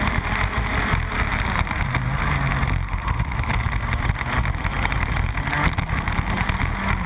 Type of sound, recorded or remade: recorded